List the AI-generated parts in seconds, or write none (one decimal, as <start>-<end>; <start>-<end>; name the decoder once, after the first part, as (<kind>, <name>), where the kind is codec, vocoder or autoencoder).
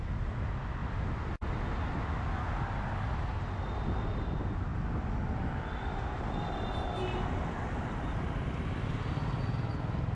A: none